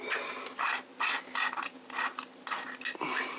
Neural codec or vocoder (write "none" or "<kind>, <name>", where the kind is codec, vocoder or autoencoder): none